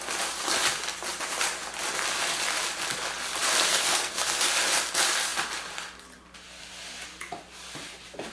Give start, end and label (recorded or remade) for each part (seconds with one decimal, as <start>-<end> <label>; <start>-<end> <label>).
0.0-3.7 recorded; 3.7-4.4 remade; 4.4-8.3 recorded